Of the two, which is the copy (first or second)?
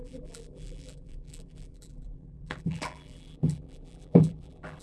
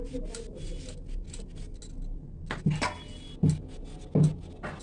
first